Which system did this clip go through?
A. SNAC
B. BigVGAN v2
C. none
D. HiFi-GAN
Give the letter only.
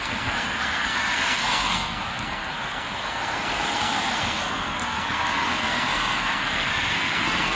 A